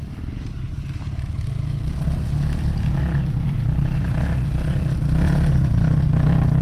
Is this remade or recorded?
recorded